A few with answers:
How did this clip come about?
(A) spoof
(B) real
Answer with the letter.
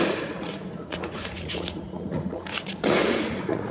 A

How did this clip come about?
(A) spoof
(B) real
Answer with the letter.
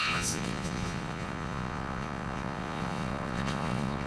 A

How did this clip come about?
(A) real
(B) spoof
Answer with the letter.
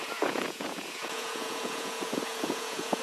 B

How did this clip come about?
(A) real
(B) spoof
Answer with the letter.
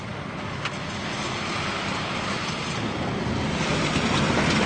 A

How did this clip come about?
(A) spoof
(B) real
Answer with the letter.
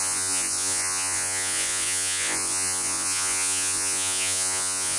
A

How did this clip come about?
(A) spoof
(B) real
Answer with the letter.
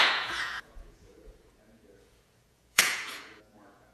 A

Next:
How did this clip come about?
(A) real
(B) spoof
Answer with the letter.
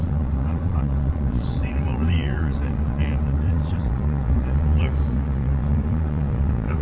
B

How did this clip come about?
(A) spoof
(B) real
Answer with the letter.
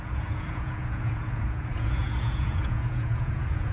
A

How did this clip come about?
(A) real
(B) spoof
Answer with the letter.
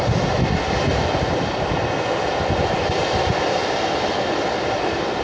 A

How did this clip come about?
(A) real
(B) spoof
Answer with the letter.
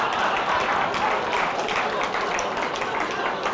A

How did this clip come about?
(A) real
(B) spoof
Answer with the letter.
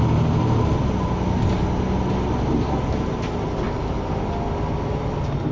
A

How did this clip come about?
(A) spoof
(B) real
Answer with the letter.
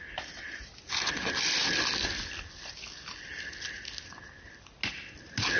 B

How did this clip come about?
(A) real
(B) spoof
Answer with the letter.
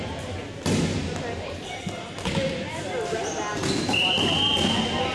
A